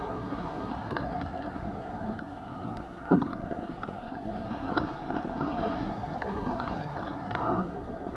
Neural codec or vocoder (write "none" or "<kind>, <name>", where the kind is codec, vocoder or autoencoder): codec, SNAC